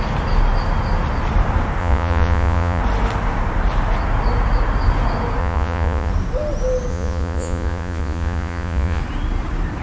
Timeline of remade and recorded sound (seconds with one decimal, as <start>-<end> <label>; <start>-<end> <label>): 0.0-1.8 recorded; 1.8-2.8 remade; 2.8-5.4 recorded; 5.4-6.1 remade; 6.1-6.9 recorded; 6.9-9.0 remade; 9.0-9.8 recorded

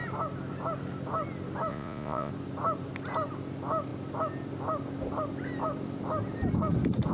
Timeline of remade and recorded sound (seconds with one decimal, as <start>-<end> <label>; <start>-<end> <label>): 0.0-1.7 recorded; 1.7-2.3 remade; 2.3-7.1 recorded

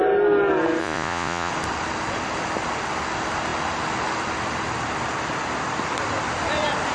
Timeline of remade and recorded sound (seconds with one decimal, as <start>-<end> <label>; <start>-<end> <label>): 0.0-0.8 recorded; 0.8-1.5 remade; 1.5-6.9 recorded

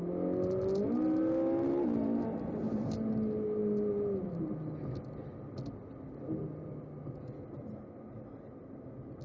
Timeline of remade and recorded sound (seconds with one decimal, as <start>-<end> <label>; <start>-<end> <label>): 0.0-9.2 recorded

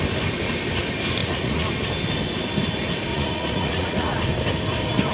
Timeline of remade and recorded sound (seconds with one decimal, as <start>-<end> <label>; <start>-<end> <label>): 0.0-1.2 recorded; 1.2-1.7 remade; 1.7-3.1 recorded; 3.1-4.2 remade; 4.2-5.1 recorded

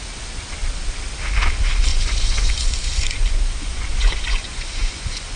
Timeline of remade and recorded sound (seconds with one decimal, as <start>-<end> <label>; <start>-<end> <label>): 0.0-1.9 recorded; 1.9-5.4 remade

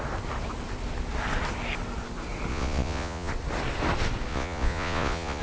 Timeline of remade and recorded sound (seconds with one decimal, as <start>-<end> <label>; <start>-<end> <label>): 0.0-2.5 recorded; 2.5-3.3 remade; 3.3-4.3 recorded; 4.3-5.4 remade

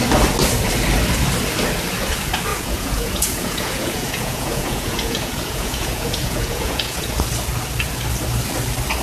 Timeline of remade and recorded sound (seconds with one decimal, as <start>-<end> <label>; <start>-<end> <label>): 0.0-2.5 recorded; 2.5-7.1 remade; 7.1-9.0 recorded